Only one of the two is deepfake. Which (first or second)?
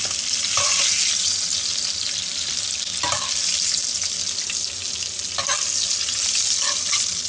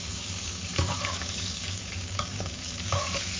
second